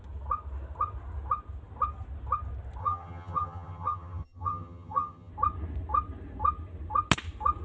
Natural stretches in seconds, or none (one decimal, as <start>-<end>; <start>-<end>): 0.0-2.8; 5.3-7.6